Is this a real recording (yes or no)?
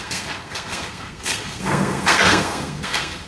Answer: no